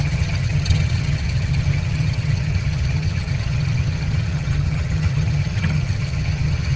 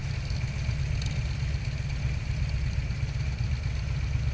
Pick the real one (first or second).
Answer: second